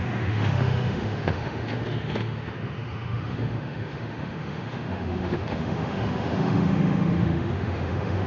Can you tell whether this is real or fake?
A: fake